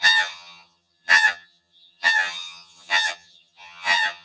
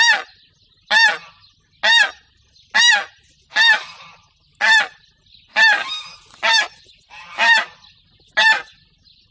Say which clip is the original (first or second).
second